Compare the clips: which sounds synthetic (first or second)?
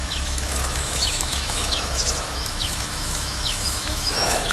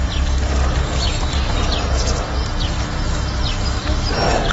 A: first